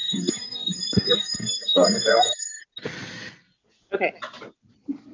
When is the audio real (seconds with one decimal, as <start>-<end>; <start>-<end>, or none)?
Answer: 2.6-5.1